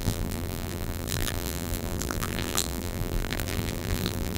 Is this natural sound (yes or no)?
no